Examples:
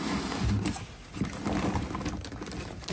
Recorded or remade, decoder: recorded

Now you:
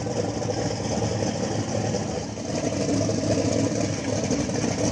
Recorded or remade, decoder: recorded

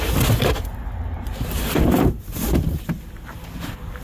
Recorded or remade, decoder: recorded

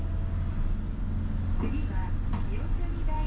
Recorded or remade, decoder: recorded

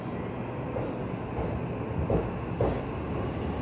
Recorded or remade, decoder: recorded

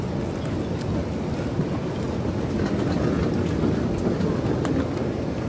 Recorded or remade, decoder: recorded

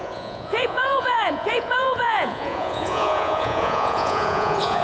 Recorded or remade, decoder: remade, vocoder, Vocos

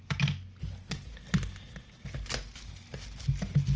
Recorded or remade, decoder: recorded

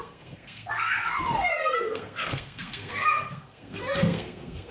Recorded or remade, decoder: remade, codec, SNAC